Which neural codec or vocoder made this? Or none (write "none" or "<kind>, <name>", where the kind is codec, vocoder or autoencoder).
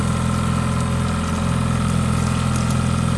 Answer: none